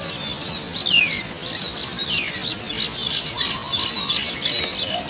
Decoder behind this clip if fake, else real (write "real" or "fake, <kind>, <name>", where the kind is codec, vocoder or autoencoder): real